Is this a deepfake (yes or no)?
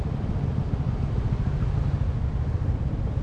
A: no